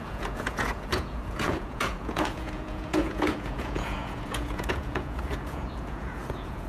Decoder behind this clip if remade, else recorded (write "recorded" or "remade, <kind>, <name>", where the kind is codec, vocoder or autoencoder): remade, vocoder, Vocos